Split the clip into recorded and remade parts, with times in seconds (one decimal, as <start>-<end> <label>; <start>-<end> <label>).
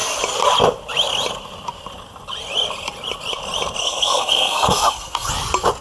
0.0-3.8 recorded; 3.8-5.3 remade; 5.3-5.8 recorded